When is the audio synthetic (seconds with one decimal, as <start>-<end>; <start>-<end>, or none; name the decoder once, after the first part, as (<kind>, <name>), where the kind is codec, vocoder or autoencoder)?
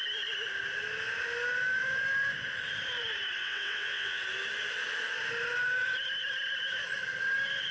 3.4-4.2 (vocoder, WaveNeXt)